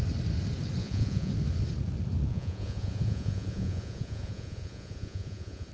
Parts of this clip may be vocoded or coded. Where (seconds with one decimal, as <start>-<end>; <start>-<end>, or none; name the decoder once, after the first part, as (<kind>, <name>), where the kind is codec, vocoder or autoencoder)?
0.8-1.3 (vocoder, Vocos); 2.3-5.7